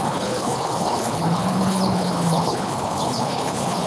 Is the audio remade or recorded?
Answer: remade